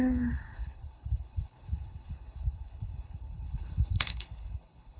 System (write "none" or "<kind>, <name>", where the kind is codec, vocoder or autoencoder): codec, HILCodec